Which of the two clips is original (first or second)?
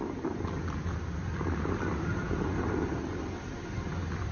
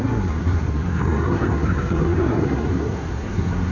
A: first